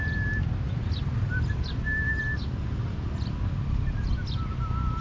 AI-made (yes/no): no